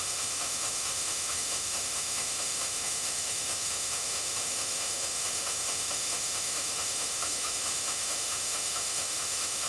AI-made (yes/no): yes